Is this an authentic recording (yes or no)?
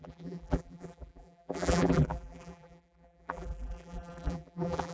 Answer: no